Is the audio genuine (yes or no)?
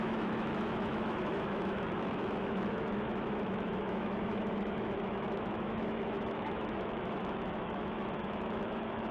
no